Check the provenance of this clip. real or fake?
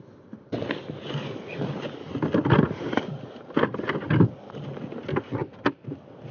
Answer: real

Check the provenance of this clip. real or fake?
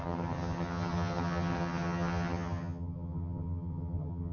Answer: fake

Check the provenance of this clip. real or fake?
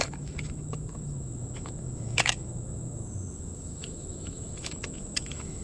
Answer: fake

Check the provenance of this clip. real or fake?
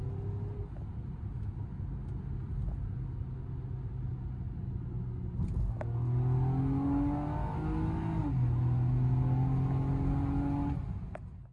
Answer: real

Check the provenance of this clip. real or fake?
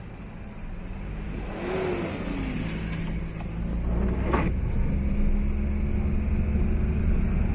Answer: real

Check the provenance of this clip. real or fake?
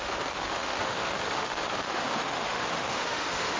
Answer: fake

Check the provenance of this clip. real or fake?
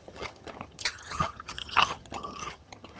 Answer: fake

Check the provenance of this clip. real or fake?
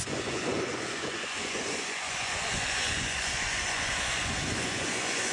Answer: fake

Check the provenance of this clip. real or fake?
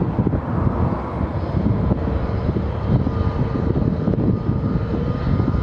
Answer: real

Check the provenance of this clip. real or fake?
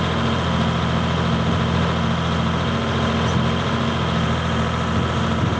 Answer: real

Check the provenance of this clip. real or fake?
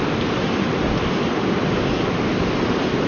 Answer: real